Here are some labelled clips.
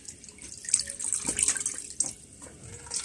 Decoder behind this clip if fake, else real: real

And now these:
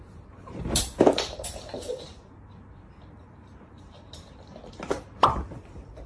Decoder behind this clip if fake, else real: fake, vocoder, BigVGAN v2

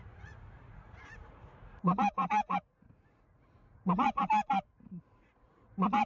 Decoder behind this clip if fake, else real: fake, vocoder, Vocos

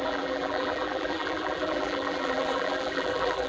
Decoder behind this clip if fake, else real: fake, vocoder, BigVGAN v2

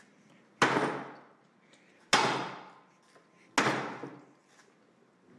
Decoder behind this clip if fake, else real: real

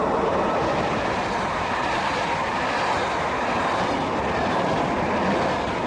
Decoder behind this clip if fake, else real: real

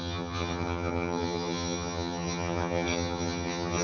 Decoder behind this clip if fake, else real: fake, vocoder, HiFi-GAN